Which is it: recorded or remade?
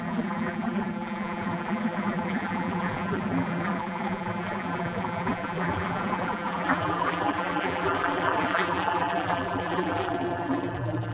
remade